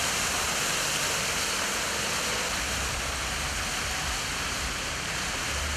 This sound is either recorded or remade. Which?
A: recorded